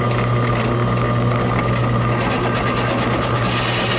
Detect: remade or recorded recorded